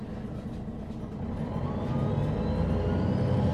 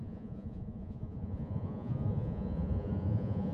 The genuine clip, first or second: first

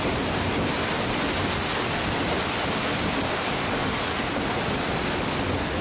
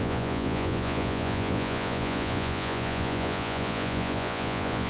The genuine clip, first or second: first